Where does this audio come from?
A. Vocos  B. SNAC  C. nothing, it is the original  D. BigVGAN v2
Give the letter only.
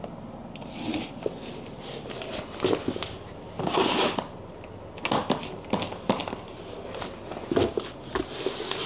C